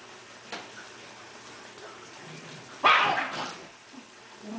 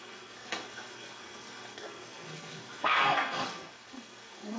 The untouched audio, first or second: first